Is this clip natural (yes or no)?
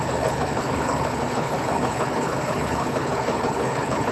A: no